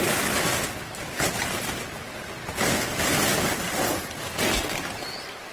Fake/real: real